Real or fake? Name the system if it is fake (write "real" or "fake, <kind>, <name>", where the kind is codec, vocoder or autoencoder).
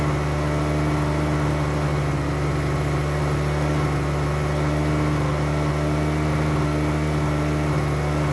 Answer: real